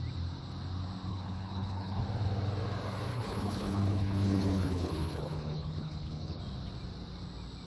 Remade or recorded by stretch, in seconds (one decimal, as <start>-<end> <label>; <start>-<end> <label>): 0.0-1.1 recorded; 1.1-2.0 remade; 2.0-3.1 recorded; 3.1-6.4 remade; 6.4-7.7 recorded